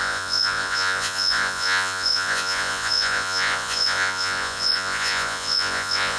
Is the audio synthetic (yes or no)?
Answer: yes